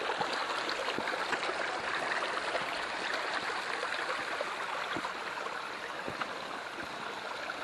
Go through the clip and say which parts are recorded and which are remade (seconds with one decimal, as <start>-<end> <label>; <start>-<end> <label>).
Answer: 0.0-7.6 recorded